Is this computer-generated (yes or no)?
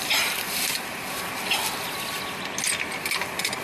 no